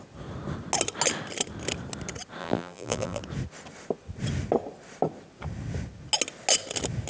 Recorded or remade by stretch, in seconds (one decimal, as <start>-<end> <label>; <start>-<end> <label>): 0.0-2.4 recorded; 2.4-3.2 remade; 3.2-7.1 recorded